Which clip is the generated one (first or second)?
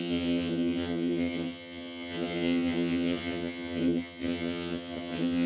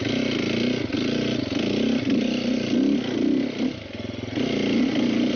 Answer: first